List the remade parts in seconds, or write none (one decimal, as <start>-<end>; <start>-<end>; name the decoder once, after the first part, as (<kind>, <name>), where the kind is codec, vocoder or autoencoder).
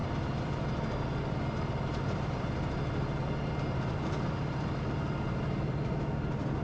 none